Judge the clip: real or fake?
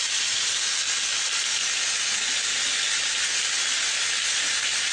real